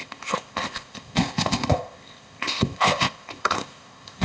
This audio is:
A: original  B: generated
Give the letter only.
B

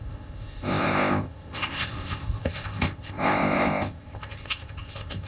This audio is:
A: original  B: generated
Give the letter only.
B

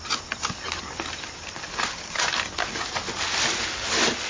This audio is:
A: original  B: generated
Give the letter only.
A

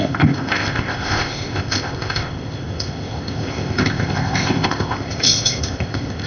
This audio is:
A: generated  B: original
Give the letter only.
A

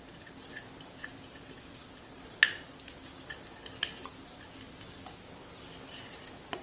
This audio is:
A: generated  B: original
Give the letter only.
B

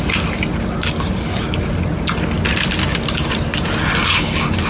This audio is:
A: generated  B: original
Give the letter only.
B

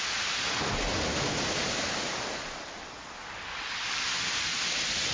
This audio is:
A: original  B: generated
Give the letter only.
A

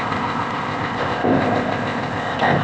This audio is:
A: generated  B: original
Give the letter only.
A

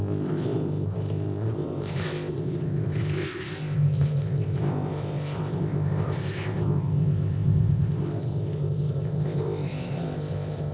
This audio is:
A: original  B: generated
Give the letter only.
B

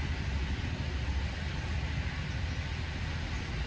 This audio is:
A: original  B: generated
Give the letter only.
A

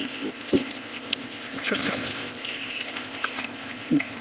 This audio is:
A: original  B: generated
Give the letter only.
B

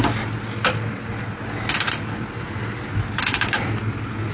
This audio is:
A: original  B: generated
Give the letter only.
A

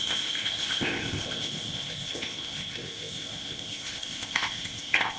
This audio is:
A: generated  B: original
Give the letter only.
A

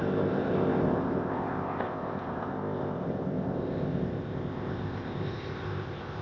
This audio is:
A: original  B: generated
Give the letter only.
B